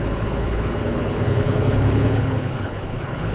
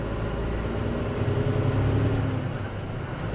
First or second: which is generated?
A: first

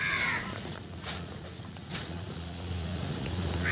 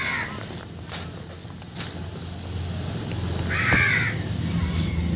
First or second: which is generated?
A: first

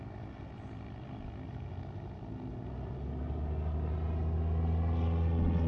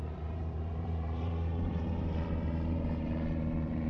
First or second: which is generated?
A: second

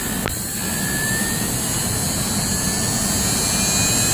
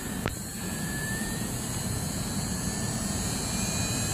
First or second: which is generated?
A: second